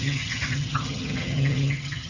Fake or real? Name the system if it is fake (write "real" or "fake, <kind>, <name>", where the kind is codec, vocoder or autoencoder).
fake, vocoder, HiFi-GAN